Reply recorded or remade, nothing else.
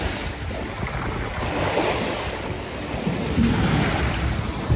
recorded